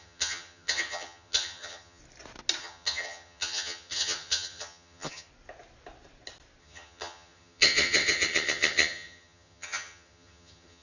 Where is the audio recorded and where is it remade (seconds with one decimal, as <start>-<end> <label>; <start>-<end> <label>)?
0.0-2.0 remade; 2.0-2.6 recorded; 2.6-5.3 remade; 5.3-6.6 recorded; 6.6-10.8 remade